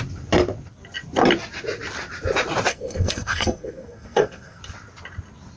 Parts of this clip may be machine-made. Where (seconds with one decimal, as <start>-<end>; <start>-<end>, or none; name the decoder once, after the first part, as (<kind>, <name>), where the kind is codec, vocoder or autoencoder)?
2.7-4.6 (codec, SNAC)